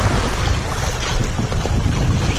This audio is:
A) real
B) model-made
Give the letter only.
A